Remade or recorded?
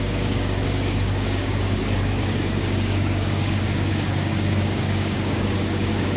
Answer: remade